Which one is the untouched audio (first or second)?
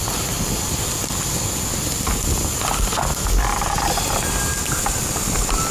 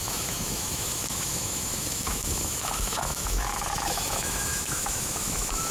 first